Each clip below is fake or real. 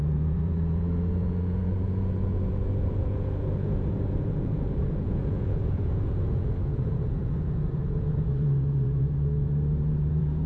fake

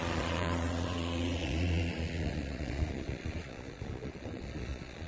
fake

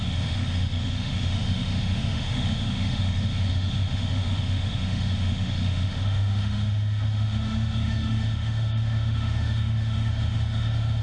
fake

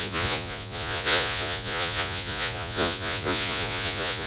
fake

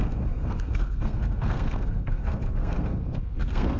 fake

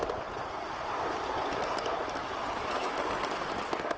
real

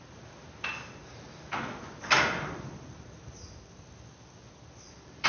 real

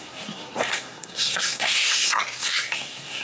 fake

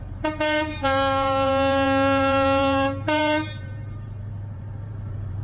fake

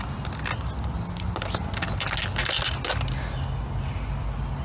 real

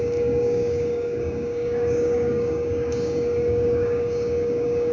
fake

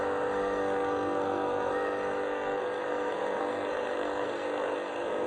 fake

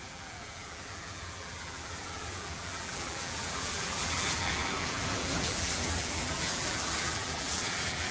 fake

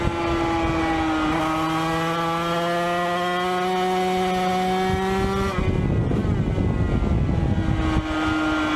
real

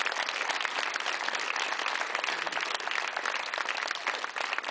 real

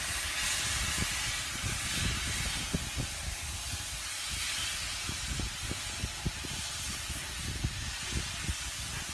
real